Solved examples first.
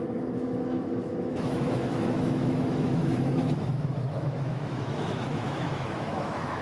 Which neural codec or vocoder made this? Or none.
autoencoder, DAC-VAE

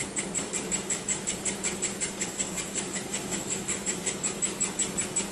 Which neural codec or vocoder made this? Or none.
codec, DAC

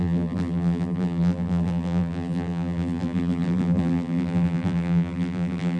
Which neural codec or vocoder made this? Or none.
vocoder, BigVGAN v2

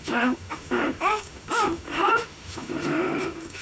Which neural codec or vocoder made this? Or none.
autoencoder, DAC-VAE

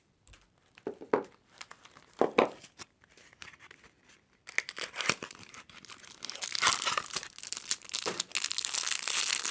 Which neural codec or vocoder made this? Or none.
none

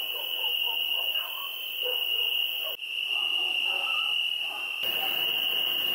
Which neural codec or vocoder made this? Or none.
none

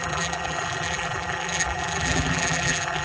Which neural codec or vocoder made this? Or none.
vocoder, BigVGAN v2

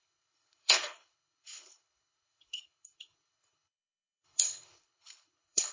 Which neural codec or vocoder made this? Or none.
codec, HILCodec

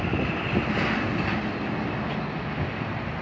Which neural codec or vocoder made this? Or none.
none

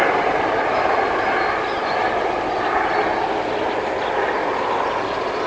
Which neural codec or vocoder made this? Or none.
none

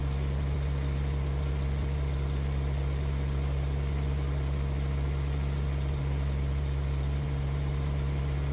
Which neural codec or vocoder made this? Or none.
none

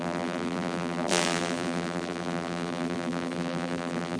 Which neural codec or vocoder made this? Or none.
vocoder, BigVGAN v2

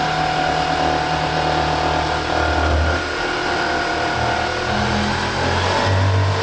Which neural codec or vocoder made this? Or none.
none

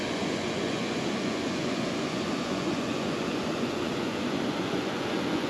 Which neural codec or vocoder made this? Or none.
vocoder, Vocos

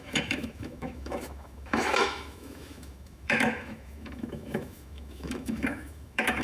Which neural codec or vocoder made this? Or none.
autoencoder, DAC-VAE